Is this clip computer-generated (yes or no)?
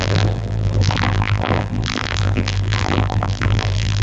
yes